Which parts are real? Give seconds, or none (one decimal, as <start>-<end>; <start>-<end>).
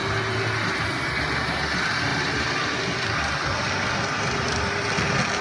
0.0-2.1; 2.8-5.4